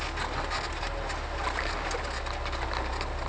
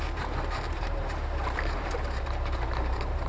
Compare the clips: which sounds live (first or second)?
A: first